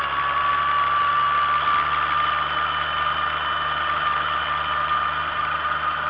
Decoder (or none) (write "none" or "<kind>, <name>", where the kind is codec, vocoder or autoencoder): none